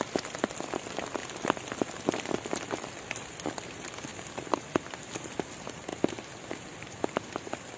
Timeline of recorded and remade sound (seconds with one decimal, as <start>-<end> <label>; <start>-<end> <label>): 0.0-1.2 remade; 1.2-2.2 recorded; 2.2-7.8 remade